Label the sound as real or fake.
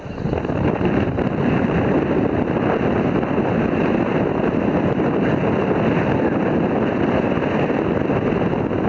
real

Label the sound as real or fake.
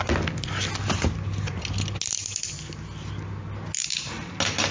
real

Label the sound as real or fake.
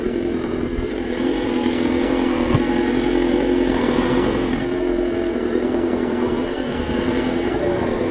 fake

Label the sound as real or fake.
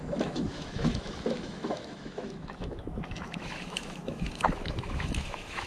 fake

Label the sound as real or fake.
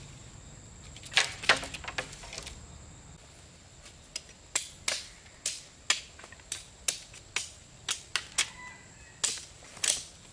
real